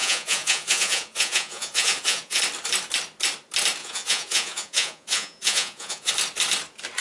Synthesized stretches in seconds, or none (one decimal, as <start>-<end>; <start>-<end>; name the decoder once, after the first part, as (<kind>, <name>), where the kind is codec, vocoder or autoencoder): 0.0-2.4 (vocoder, Vocos); 3.8-6.1